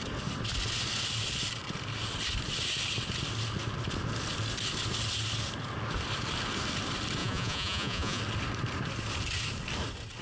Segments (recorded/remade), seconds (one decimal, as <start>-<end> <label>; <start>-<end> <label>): 0.0-7.2 recorded; 7.2-8.2 remade; 8.2-10.2 recorded